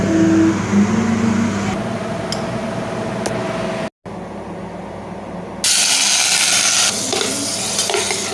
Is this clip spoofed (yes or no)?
no